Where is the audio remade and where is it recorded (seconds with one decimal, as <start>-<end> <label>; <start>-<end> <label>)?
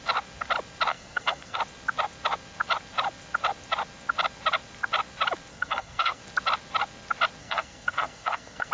0.0-0.9 recorded; 0.9-1.6 remade; 1.6-5.5 recorded; 5.5-6.2 remade; 6.2-7.4 recorded; 7.4-8.7 remade